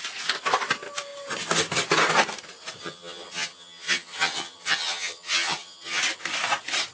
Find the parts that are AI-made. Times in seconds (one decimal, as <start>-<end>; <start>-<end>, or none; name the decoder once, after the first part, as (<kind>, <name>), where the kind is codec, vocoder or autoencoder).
2.8-6.0 (vocoder, HiFi-GAN)